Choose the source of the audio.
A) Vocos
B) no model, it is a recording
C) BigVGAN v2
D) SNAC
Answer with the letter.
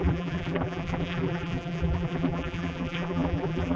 C